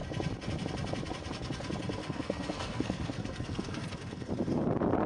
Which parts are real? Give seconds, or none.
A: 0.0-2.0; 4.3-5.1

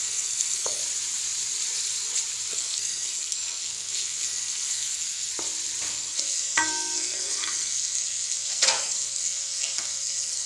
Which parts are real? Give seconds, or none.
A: 0.8-2.5; 5.3-5.9

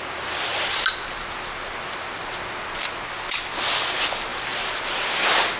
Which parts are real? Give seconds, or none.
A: 0.0-5.6